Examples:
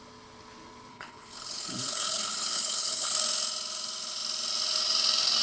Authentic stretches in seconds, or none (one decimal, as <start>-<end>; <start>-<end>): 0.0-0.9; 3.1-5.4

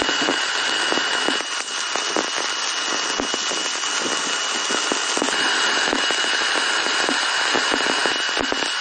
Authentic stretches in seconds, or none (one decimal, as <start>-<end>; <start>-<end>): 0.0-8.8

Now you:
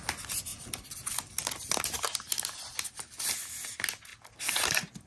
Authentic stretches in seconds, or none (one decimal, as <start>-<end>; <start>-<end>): 0.0-5.1

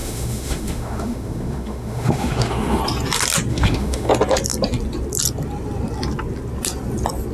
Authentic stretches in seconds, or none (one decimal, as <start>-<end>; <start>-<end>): 2.8-3.5; 4.1-7.3